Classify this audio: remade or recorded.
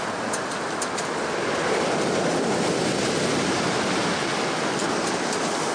recorded